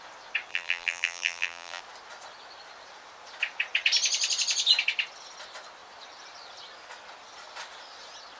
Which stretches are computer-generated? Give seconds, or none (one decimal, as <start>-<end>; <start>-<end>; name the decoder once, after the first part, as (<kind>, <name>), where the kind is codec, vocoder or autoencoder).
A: 0.5-1.8 (vocoder, BigVGAN v2)